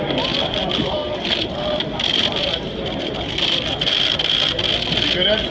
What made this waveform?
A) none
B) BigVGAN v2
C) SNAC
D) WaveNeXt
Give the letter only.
A